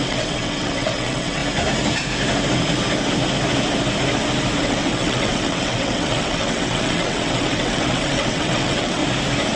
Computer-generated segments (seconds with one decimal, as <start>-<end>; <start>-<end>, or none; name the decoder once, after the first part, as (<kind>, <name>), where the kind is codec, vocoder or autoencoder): 0.0-1.4 (vocoder, WaveNeXt); 4.6-9.0